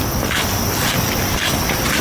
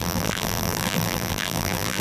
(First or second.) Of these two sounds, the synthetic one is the second